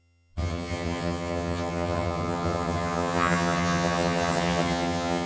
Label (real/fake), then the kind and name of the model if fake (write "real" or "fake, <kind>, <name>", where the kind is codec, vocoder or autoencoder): fake, vocoder, HiFi-GAN